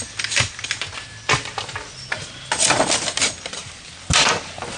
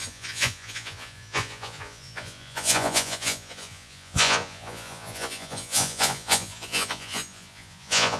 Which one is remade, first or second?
second